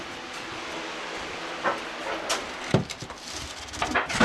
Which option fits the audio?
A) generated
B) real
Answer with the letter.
B